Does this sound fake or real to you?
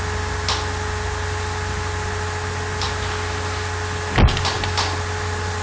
real